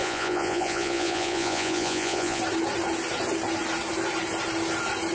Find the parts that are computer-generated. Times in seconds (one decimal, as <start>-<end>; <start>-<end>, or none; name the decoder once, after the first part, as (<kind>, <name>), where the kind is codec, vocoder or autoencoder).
0.0-2.4 (vocoder, Vocos)